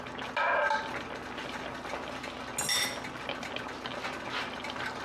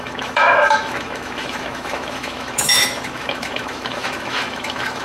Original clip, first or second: first